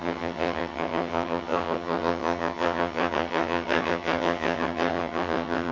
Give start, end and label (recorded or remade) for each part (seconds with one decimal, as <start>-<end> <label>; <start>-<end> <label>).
0.0-5.7 remade